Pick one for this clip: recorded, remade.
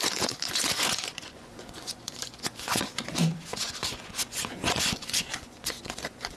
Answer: remade